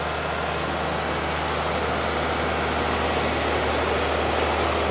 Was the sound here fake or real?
real